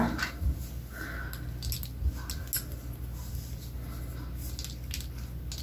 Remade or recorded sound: recorded